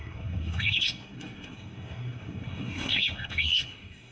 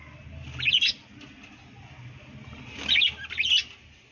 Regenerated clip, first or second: first